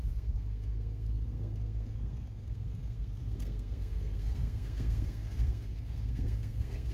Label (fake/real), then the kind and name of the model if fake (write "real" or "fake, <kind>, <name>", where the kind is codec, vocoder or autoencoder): fake, codec, SNAC